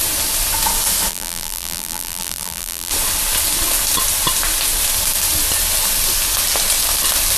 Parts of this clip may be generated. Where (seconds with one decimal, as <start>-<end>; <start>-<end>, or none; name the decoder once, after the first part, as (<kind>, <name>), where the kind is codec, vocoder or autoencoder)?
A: 1.1-2.9 (vocoder, BigVGAN v2)